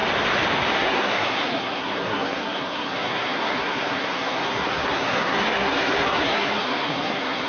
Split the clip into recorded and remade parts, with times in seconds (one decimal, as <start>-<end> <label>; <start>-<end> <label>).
0.0-0.7 recorded; 0.7-7.5 remade

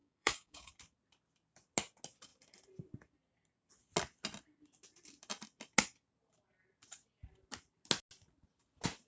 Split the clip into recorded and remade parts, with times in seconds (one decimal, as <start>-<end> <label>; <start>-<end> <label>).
0.0-0.7 remade; 0.7-9.1 recorded

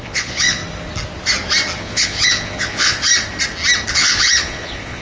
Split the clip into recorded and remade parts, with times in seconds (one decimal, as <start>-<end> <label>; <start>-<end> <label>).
0.0-0.6 remade; 0.6-1.8 recorded; 1.8-3.1 remade; 3.1-3.9 recorded; 3.9-5.0 remade

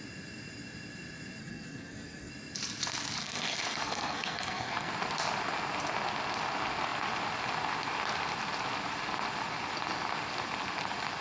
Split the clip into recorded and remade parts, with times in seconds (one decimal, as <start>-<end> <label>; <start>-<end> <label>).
0.0-1.4 recorded; 1.4-2.3 remade; 2.3-3.2 recorded; 3.2-4.9 remade; 4.9-11.2 recorded

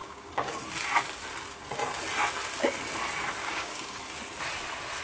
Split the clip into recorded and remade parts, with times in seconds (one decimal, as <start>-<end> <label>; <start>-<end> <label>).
0.0-0.6 remade; 0.6-3.4 recorded; 3.4-4.0 remade; 4.0-5.0 recorded

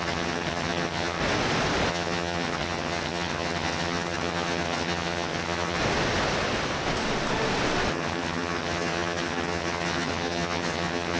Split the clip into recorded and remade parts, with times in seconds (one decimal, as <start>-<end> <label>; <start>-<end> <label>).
0.0-1.2 remade; 1.2-1.9 recorded; 1.9-5.8 remade; 5.8-7.9 recorded; 7.9-11.2 remade